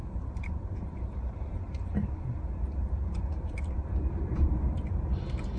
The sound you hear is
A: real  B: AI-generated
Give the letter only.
B